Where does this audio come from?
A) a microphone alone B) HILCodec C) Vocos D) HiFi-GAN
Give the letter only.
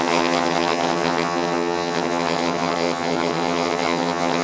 D